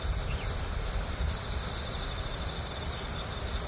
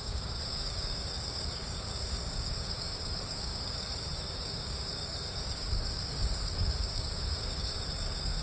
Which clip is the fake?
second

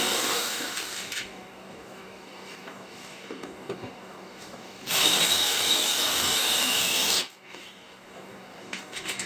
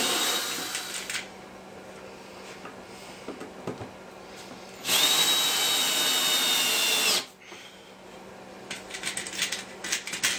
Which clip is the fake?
first